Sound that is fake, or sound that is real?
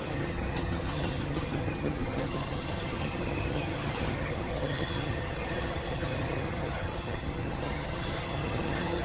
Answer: fake